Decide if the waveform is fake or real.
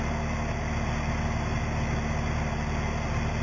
real